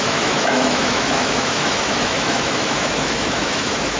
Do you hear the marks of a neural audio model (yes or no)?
yes